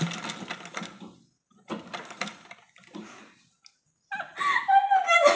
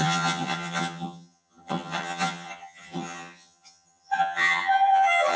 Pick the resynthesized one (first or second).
second